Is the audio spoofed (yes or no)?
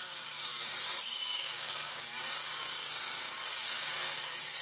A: yes